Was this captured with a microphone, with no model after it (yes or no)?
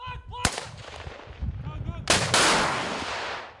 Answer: yes